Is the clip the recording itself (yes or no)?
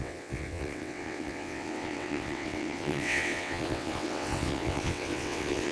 no